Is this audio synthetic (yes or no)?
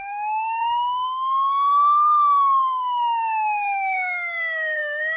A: yes